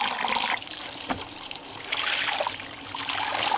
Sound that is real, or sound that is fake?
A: real